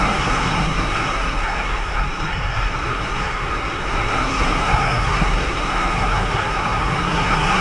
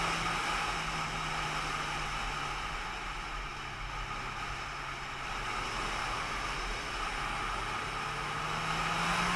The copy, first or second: first